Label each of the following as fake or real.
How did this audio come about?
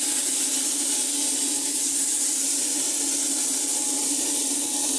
real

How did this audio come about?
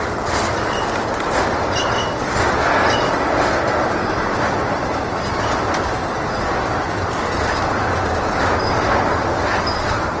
real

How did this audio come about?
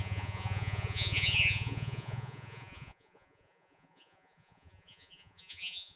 fake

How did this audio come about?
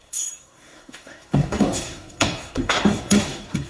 fake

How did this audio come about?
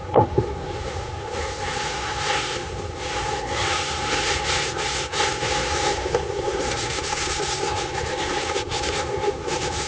fake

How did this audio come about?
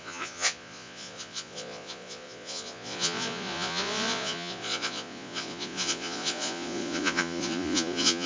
fake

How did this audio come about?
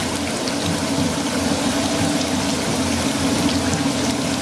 real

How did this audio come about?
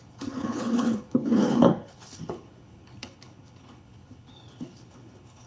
fake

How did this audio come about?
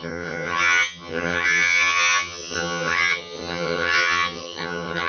fake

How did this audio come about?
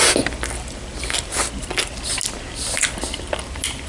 real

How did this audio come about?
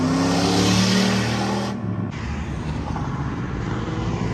real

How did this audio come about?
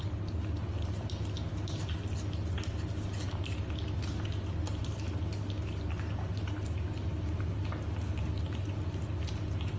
real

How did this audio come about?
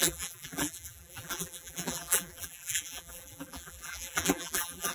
fake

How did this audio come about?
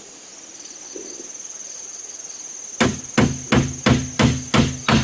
real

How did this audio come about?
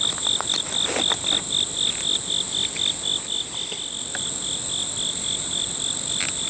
real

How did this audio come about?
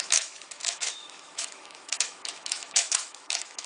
fake